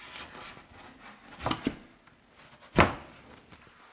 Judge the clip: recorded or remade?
recorded